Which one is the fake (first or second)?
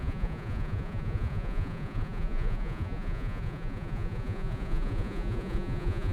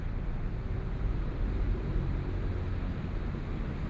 first